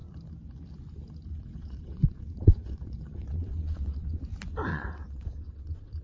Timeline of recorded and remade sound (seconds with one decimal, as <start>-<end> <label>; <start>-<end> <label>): 0.0-1.3 recorded; 1.3-4.2 remade; 4.2-4.7 recorded; 4.7-6.0 remade